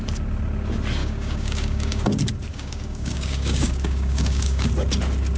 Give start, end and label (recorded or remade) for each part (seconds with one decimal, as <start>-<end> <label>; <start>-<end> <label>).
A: 0.0-1.0 recorded; 1.0-2.0 remade; 2.0-2.5 recorded; 2.5-4.7 remade; 4.7-5.4 recorded